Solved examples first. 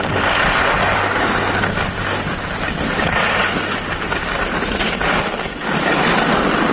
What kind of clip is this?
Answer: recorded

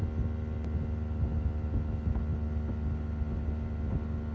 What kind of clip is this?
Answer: recorded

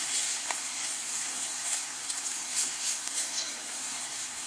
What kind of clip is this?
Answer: remade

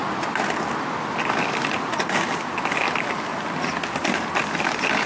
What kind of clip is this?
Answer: recorded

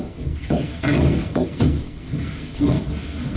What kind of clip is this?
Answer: remade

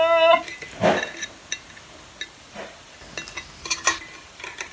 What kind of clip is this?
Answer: recorded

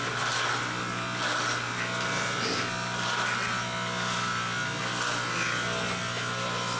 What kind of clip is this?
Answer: recorded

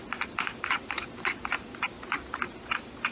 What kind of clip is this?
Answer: recorded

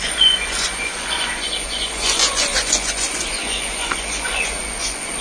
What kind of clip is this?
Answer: remade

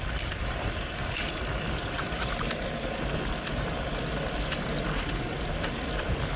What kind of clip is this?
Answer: recorded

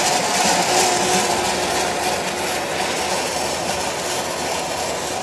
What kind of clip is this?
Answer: recorded